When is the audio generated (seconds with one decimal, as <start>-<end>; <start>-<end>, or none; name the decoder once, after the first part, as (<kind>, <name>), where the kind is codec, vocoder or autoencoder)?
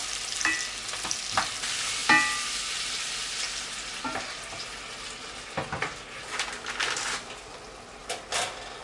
none